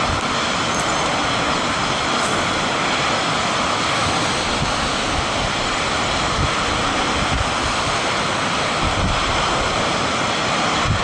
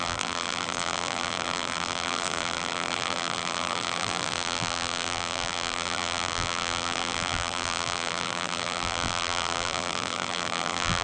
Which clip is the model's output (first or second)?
second